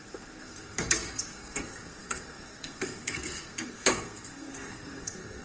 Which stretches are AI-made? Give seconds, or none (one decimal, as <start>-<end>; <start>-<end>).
0.0-5.4